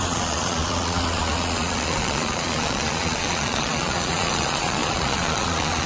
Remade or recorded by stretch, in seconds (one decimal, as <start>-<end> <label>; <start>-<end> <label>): 0.0-5.9 remade